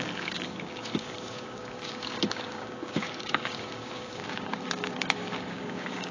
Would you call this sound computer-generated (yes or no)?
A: yes